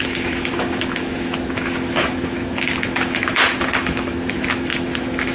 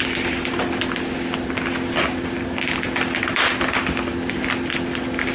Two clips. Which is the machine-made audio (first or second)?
first